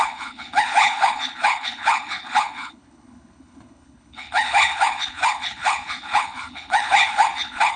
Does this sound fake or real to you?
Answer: fake